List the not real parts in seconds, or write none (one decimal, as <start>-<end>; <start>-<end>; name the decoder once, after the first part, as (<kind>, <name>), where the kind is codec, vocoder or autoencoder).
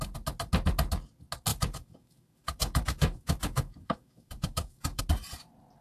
1.5-5.0 (autoencoder, DAC-VAE)